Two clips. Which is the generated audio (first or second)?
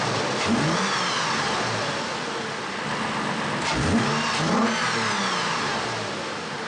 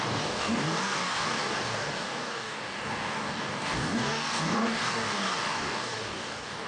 second